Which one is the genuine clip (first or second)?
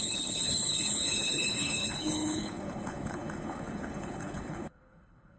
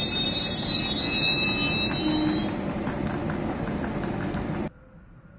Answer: second